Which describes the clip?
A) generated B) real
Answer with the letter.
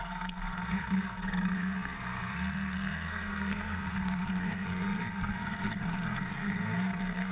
A